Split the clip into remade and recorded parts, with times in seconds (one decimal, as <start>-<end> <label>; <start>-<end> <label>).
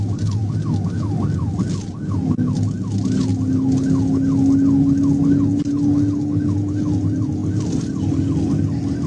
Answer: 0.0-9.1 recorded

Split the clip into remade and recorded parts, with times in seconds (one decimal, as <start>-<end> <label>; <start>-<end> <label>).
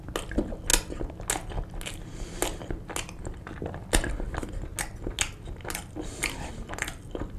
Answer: 0.0-7.4 recorded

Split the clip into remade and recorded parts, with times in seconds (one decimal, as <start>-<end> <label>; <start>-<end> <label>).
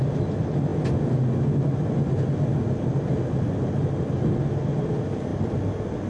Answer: 0.0-6.1 recorded